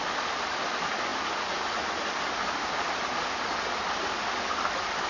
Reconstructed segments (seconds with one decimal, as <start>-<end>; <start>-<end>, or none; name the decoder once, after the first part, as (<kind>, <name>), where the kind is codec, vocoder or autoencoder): none